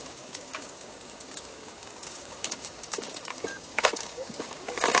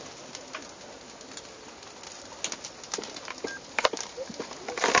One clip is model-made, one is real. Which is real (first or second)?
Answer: second